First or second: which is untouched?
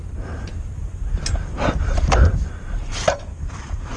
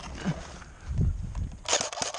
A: second